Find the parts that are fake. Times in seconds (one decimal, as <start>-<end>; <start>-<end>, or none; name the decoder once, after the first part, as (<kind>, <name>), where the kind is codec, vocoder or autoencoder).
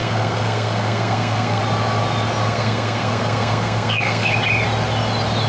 0.0-1.6 (codec, SNAC); 2.4-4.3